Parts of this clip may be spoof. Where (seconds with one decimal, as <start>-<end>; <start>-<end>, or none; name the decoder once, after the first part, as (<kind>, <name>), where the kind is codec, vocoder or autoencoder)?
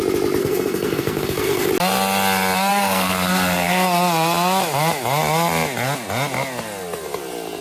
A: 0.4-1.7 (codec, SNAC); 2.7-4.0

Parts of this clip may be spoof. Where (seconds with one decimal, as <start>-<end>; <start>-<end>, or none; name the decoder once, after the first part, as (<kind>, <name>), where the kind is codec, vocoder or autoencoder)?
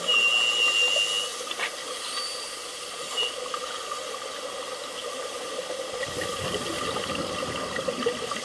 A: none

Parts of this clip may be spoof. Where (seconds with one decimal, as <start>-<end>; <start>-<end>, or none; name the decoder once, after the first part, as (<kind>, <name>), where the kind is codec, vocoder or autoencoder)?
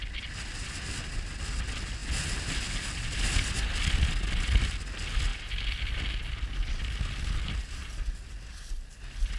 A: none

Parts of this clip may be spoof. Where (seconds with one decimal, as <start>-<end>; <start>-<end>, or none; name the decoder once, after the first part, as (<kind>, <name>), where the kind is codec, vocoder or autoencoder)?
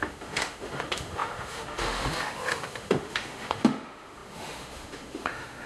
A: 0.0-5.7 (autoencoder, DAC-VAE)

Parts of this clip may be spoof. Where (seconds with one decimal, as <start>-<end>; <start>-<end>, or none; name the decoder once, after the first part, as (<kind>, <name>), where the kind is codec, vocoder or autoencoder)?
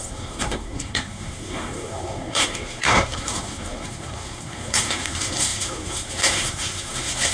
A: 0.0-7.3 (codec, SNAC)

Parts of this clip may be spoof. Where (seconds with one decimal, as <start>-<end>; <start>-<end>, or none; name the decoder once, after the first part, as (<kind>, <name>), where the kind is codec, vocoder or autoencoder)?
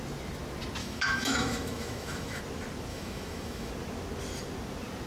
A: 0.8-2.4 (autoencoder, DAC-VAE); 2.9-3.7